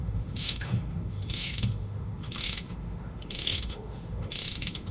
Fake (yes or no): yes